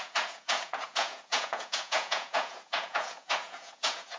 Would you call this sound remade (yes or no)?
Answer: yes